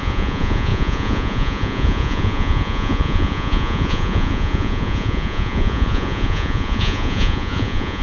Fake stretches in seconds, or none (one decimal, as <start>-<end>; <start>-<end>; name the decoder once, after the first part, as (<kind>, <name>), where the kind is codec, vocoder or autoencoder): 0.0-8.0 (vocoder, Vocos)